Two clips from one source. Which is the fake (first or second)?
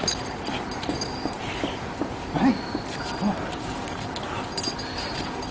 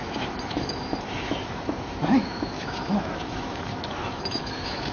second